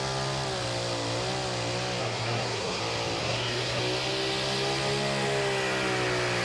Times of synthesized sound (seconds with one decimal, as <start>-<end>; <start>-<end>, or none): 2.0-2.8; 3.2-3.8